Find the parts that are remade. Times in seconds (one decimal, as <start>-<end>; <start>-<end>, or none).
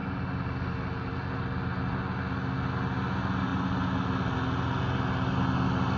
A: none